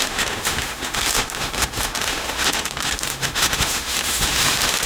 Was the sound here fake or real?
fake